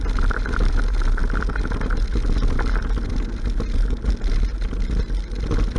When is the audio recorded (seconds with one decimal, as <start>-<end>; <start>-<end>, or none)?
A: 0.0-5.8